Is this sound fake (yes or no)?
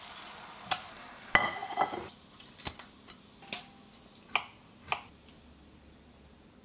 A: no